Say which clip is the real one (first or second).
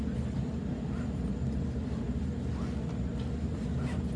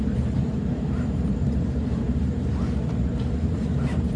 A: first